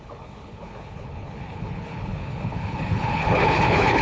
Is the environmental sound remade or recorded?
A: remade